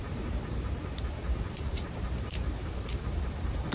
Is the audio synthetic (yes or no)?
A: yes